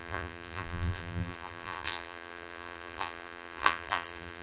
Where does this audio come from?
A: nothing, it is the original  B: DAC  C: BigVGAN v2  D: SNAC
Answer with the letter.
C